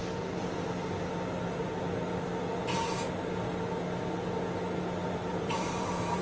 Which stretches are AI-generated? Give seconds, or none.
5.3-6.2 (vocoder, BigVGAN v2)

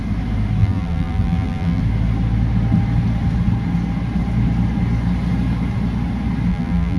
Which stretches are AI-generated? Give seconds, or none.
0.6-1.8 (vocoder, BigVGAN v2); 6.5-7.0

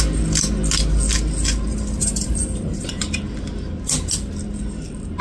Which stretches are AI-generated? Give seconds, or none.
1.7-3.0 (vocoder, BigVGAN v2)

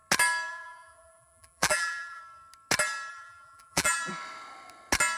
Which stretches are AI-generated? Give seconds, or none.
0.5-2.2 (vocoder, BigVGAN v2); 3.1-4.1

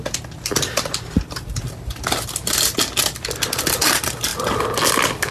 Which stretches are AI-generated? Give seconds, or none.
none

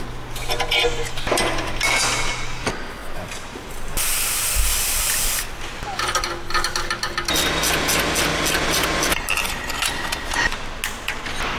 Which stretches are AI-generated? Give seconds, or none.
4.7-6.3 (vocoder, BigVGAN v2)

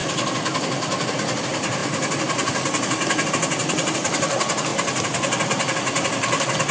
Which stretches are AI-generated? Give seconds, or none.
none